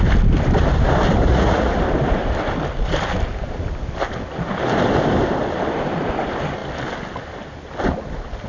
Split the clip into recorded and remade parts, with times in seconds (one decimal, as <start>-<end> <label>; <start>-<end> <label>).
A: 0.0-1.3 recorded; 1.3-1.8 remade; 1.8-8.5 recorded